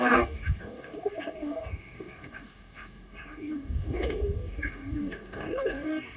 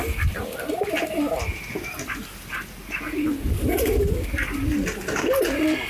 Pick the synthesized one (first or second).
first